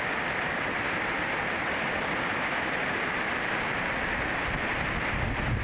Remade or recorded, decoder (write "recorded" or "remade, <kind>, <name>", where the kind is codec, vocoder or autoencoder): recorded